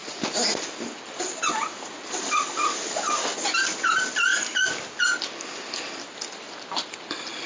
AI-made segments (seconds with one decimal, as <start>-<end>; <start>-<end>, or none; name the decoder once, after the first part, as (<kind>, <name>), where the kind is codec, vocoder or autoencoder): 0.0-4.3 (vocoder, BigVGAN v2); 4.9-7.5